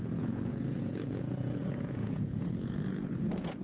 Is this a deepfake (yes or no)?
yes